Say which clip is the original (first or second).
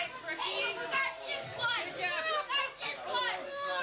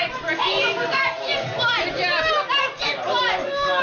first